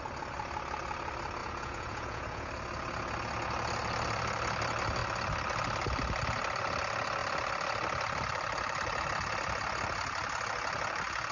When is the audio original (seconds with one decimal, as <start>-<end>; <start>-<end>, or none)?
0.0-1.4; 2.5-11.3